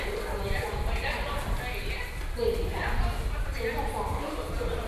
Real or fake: real